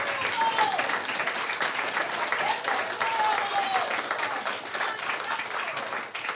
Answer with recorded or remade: recorded